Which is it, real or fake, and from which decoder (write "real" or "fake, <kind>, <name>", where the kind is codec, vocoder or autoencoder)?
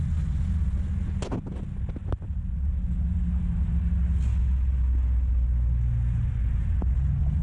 real